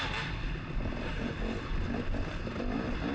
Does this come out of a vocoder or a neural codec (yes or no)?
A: no